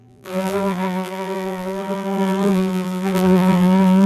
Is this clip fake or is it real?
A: fake